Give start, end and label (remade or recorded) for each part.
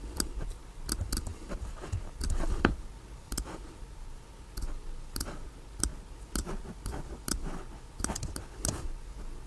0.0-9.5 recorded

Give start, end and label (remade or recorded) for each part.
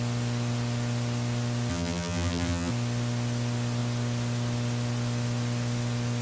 0.0-1.7 recorded; 1.7-2.7 remade; 2.7-6.2 recorded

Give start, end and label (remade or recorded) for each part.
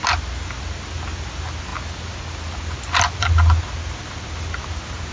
0.0-5.1 recorded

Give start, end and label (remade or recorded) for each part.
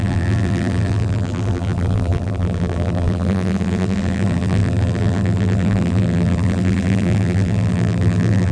0.0-8.5 remade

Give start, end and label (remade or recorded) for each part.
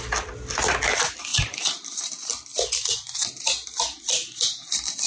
0.0-1.3 recorded; 1.3-2.0 remade; 2.0-2.5 recorded; 2.5-3.3 remade; 3.3-5.1 recorded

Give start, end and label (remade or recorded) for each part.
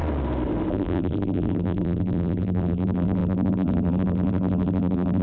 0.0-0.7 recorded; 0.7-5.2 remade